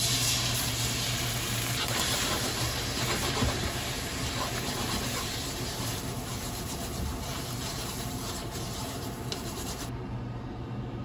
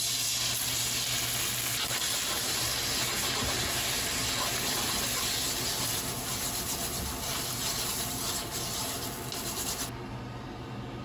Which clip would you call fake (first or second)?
first